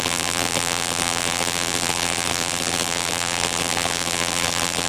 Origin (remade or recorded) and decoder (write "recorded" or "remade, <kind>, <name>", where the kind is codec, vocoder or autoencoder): remade, vocoder, BigVGAN v2